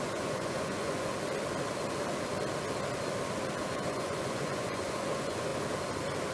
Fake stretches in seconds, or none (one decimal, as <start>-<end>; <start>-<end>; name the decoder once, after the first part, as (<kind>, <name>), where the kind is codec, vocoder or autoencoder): 0.0-1.1 (vocoder, Vocos); 3.7-5.5